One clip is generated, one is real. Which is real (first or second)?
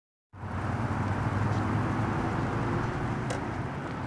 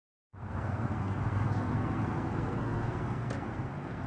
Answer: first